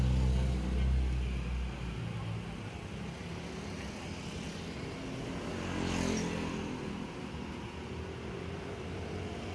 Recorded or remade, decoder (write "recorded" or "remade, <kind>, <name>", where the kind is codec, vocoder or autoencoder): recorded